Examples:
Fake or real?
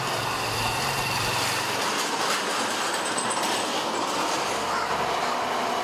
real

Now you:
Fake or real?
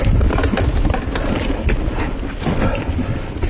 real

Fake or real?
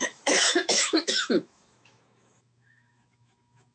fake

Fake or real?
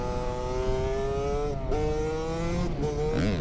real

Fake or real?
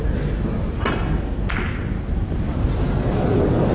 real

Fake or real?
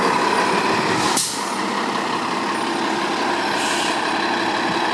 real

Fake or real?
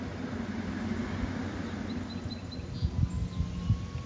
real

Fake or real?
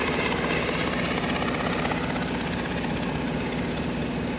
real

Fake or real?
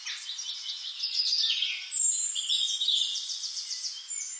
real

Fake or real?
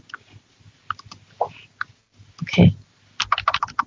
real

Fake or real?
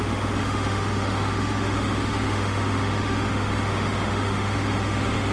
fake